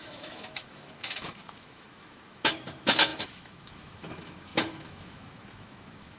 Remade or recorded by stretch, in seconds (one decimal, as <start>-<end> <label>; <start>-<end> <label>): 0.0-6.2 remade